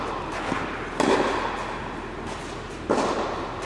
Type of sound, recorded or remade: recorded